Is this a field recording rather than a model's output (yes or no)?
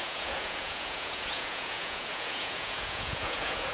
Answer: no